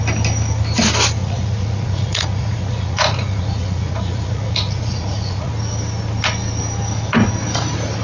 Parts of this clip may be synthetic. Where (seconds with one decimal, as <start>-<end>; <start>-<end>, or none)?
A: 1.2-5.5